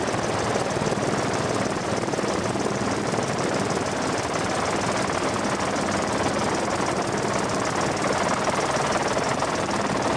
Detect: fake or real fake